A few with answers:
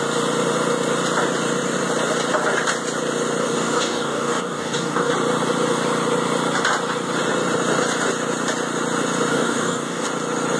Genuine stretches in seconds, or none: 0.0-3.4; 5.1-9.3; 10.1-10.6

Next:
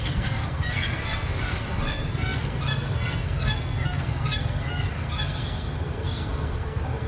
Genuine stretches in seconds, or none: none

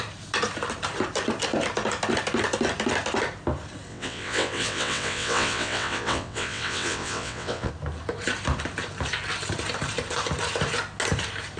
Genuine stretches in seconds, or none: 0.0-3.9; 7.7-11.6

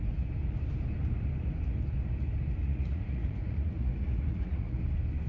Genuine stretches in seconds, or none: 0.0-2.6; 4.8-5.3

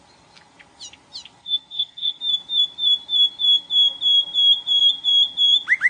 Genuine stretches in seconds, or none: 0.0-1.4; 2.2-5.9